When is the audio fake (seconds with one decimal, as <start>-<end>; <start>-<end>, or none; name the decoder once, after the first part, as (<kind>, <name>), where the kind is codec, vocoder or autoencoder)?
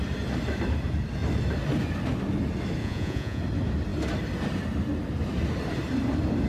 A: 2.8-3.4 (vocoder, Vocos)